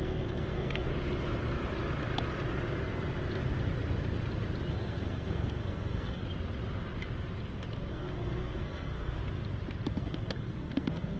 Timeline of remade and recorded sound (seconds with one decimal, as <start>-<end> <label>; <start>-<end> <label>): 0.0-0.9 remade; 0.9-4.7 recorded; 4.7-6.2 remade; 6.2-7.9 recorded; 7.9-9.2 remade; 9.2-9.9 recorded; 9.9-11.2 remade